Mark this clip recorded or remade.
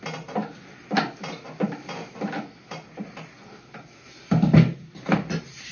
recorded